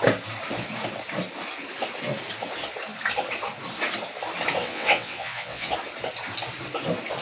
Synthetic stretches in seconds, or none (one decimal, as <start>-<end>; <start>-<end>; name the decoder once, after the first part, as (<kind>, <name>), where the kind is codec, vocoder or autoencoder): 4.6-5.7 (vocoder, WaveNeXt)